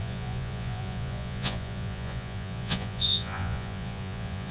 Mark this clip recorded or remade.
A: remade